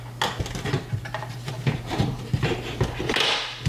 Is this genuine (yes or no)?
yes